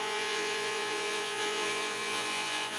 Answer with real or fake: fake